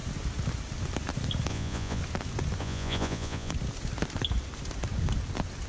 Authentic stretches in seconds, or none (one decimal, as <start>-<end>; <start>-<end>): 0.0-1.5; 2.0-2.6; 3.5-5.7